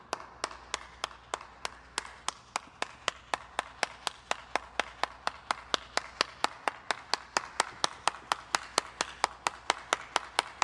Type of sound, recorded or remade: recorded